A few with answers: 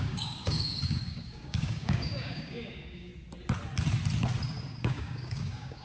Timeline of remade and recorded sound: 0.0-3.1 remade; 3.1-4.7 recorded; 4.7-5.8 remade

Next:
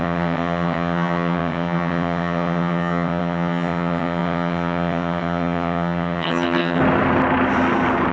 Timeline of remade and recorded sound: 0.0-6.8 remade; 6.8-8.1 recorded

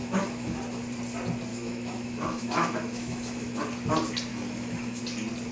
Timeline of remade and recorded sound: 0.0-0.6 remade; 0.6-1.5 recorded; 1.5-3.6 remade; 3.6-4.3 recorded; 4.3-5.0 remade; 5.0-5.5 recorded